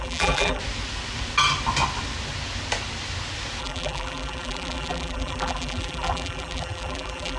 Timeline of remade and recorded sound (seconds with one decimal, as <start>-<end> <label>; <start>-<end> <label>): 0.0-0.6 remade; 0.6-3.6 recorded; 3.6-7.4 remade